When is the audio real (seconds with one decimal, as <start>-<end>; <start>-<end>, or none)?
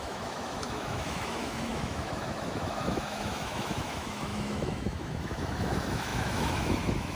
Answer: none